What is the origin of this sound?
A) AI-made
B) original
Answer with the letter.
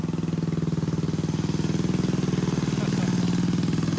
B